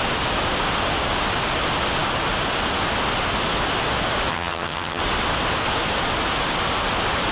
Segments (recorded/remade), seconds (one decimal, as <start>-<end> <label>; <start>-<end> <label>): 0.0-4.3 recorded; 4.3-5.0 remade; 5.0-7.3 recorded